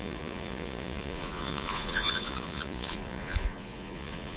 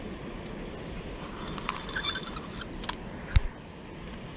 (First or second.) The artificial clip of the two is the first